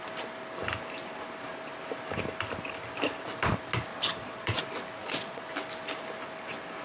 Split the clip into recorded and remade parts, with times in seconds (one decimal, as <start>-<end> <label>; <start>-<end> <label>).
0.0-3.9 recorded; 3.9-4.6 remade; 4.6-5.0 recorded; 5.0-5.5 remade; 5.5-6.8 recorded